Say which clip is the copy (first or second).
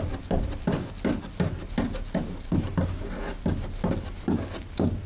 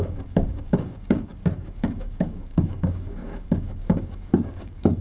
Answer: second